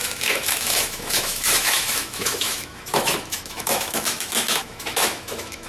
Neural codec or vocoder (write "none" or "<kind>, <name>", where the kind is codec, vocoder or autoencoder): autoencoder, DAC-VAE